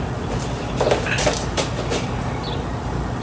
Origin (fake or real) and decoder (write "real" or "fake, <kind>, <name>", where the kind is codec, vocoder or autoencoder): real